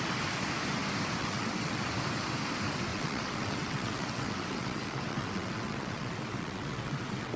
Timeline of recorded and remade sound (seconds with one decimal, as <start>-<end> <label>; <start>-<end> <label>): 0.0-1.2 recorded; 1.2-1.8 remade; 1.8-2.9 recorded; 2.9-7.4 remade